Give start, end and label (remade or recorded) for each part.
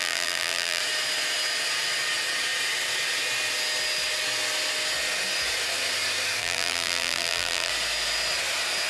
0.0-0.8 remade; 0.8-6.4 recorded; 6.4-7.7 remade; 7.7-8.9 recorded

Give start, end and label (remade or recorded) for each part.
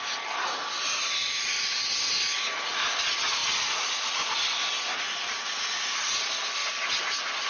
0.0-1.2 recorded; 1.2-1.9 remade; 1.9-7.5 recorded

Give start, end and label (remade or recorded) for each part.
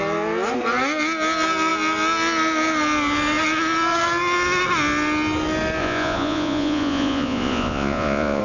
0.0-5.8 recorded; 5.8-8.4 remade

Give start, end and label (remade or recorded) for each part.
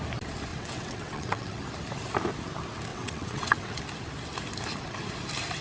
0.0-0.5 recorded; 0.5-1.6 remade; 1.6-2.9 recorded; 2.9-3.8 remade; 3.8-5.6 recorded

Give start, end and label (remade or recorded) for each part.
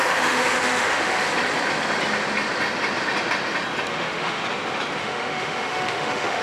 0.0-1.3 remade; 1.3-3.9 recorded; 3.9-4.4 remade; 4.4-5.0 recorded; 5.0-6.4 remade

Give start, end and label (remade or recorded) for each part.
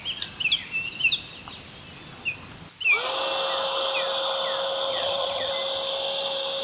0.0-4.9 recorded; 4.9-5.5 remade; 5.5-6.6 recorded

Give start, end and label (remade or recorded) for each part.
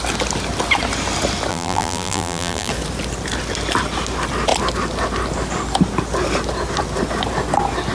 0.0-1.5 recorded; 1.5-2.7 remade; 2.7-7.9 recorded